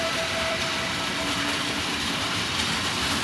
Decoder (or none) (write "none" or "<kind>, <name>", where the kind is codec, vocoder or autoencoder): vocoder, BigVGAN v2